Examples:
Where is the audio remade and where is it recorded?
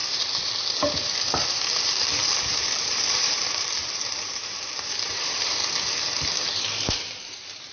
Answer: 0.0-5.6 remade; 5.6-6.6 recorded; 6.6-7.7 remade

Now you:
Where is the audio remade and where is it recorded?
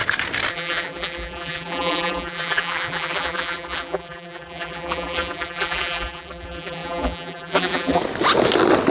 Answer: 0.0-0.5 recorded; 0.5-8.0 remade; 8.0-8.9 recorded